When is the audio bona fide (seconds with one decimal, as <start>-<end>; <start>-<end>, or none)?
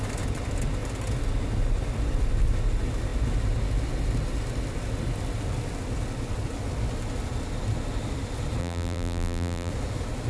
0.0-8.6; 9.7-10.3